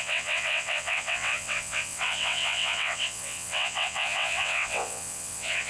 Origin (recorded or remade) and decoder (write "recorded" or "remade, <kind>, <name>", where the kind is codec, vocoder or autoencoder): remade, vocoder, WaveNeXt